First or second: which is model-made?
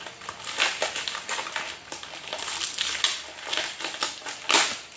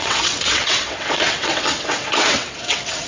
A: second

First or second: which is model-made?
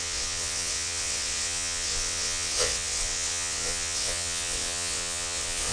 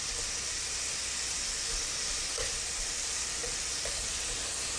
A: first